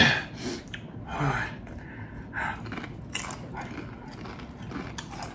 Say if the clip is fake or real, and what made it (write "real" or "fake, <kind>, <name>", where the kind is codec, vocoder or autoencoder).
real